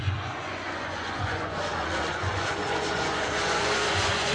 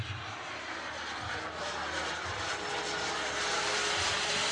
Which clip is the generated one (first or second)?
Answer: first